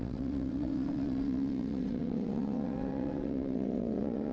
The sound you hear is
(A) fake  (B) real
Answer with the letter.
A